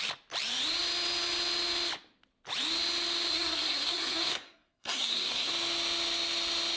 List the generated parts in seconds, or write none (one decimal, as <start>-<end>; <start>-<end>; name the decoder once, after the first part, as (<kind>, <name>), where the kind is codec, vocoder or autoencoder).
3.3-5.5 (codec, SNAC)